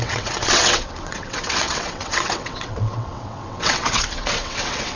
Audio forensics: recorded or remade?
remade